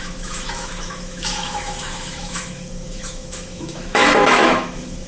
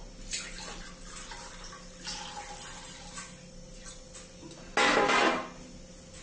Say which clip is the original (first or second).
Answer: second